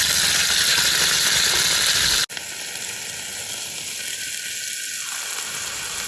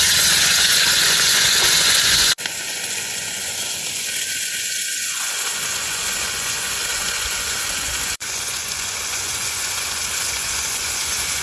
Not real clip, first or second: second